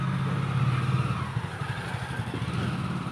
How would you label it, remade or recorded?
recorded